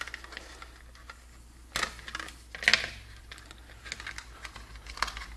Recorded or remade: recorded